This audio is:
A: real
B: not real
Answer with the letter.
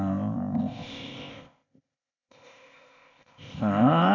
B